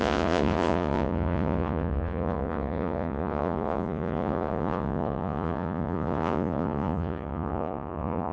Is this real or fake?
fake